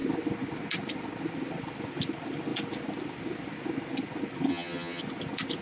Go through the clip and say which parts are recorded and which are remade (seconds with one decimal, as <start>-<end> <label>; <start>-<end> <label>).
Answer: 0.0-4.5 recorded; 4.5-5.0 remade; 5.0-5.6 recorded